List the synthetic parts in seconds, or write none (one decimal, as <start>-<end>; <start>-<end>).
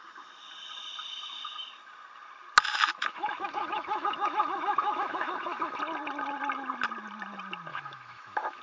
2.9-5.8; 7.7-8.6